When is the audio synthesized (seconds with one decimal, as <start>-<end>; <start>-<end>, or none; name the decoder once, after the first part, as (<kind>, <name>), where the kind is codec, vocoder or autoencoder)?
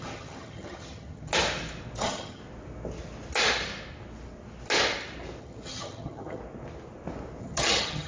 0.0-1.3 (vocoder, HiFi-GAN); 2.0-2.4; 5.4-6.4; 7.4-8.1